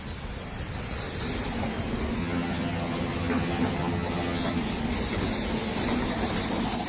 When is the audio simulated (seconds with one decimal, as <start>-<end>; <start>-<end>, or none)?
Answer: 2.2-4.6